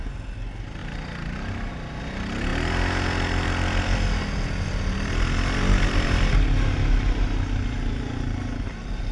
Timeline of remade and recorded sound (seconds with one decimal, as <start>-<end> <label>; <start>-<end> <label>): 0.0-9.1 recorded

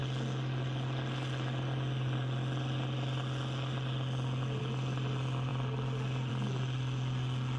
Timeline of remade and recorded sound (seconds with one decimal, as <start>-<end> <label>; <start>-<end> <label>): 0.0-7.6 recorded

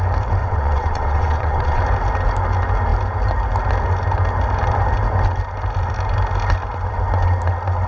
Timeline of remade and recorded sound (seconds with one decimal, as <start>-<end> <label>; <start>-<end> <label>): 0.0-0.4 recorded; 0.4-1.8 remade; 1.8-7.9 recorded

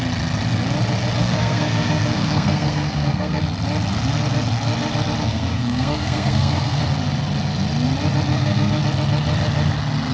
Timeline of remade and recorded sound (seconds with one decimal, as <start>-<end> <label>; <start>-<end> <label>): 0.0-1.2 recorded; 1.2-3.4 remade; 3.4-5.2 recorded; 5.2-6.8 remade; 6.8-8.3 recorded; 8.3-8.8 remade; 8.8-10.1 recorded

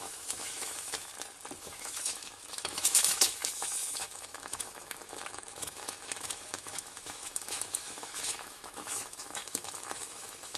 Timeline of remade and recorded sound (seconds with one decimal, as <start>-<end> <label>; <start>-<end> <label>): 0.0-1.1 remade; 1.1-1.6 recorded; 1.6-10.6 remade